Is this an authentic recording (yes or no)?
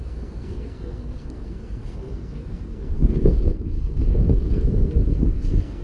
no